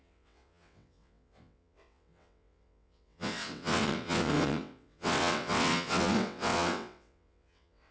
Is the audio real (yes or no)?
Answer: no